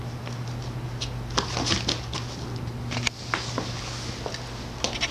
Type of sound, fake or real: real